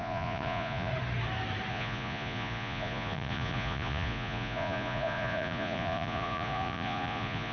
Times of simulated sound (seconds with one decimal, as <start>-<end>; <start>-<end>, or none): 0.0-0.9; 1.7-7.5